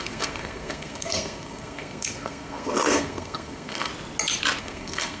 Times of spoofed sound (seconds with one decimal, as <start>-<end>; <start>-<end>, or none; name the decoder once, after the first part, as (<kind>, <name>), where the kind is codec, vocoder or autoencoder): 0.0-3.9 (codec, SNAC); 4.6-5.2